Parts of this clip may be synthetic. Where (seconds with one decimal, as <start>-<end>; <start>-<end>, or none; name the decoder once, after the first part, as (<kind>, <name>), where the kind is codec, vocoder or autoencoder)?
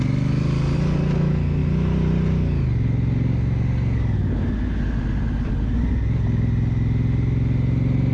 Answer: none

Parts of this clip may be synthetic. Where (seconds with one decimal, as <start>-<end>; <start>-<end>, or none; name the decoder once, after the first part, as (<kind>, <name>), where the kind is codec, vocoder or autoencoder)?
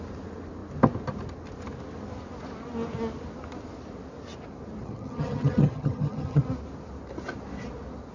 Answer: 4.8-6.4 (vocoder, HiFi-GAN)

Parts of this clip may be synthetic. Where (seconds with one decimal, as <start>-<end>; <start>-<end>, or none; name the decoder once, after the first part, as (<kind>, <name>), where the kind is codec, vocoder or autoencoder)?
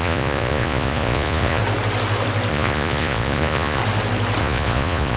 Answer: 0.0-1.6 (vocoder, Vocos); 2.5-3.8; 4.4-5.2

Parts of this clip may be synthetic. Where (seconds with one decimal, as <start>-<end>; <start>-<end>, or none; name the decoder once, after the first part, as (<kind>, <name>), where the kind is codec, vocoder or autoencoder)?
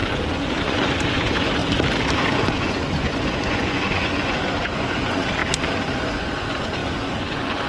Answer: 0.0-1.6 (vocoder, Vocos); 2.2-5.4; 6.0-7.7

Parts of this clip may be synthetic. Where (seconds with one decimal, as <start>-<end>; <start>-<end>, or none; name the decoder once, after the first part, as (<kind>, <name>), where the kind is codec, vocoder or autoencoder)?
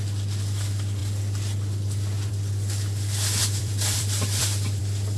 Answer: 3.4-4.8 (vocoder, BigVGAN v2)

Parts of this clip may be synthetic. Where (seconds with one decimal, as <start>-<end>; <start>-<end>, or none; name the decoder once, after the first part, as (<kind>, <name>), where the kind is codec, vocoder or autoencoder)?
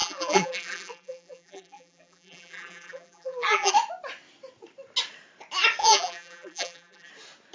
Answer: 0.0-3.7 (vocoder, BigVGAN v2); 5.8-7.1